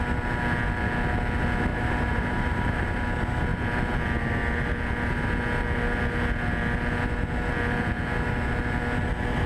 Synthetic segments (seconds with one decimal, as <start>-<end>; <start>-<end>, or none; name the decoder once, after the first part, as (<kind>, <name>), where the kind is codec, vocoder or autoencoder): 1.7-3.0 (vocoder, BigVGAN v2)